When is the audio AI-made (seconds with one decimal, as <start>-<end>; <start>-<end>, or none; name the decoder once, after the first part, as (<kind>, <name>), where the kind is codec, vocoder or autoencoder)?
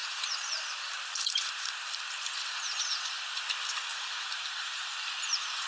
0.0-3.4 (vocoder, BigVGAN v2); 3.9-5.7